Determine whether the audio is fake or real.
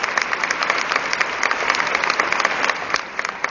real